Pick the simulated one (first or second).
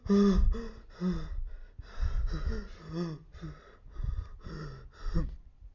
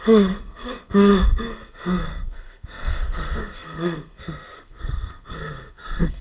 second